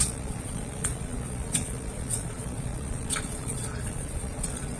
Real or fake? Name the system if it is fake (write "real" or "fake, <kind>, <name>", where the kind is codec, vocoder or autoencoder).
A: fake, vocoder, Vocos